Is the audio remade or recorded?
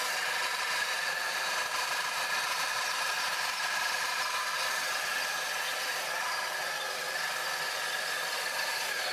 recorded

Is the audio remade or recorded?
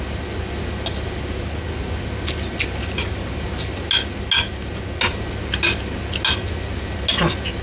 recorded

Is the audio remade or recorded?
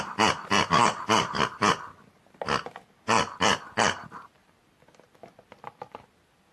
recorded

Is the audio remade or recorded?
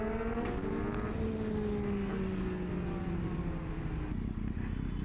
recorded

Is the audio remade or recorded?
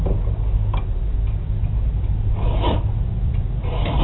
recorded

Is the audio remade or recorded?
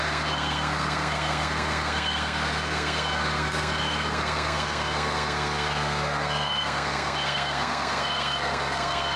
remade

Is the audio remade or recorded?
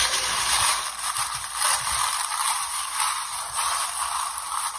recorded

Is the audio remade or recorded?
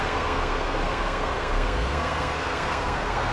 remade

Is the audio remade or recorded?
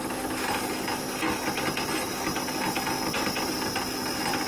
recorded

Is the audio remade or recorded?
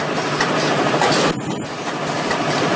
recorded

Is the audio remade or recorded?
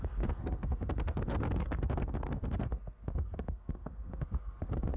remade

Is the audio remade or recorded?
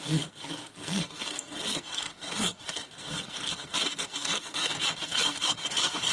remade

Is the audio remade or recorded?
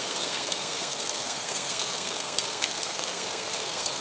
remade